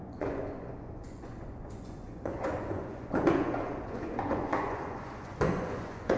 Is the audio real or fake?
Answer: fake